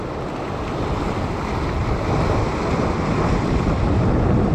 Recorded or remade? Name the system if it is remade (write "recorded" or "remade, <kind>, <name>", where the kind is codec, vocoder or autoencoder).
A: recorded